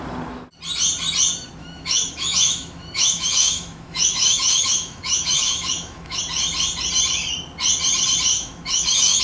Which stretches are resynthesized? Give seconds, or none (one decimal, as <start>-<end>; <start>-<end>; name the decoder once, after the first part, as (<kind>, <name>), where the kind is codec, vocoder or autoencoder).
1.6-6.2 (autoencoder, DAC-VAE); 8.3-9.2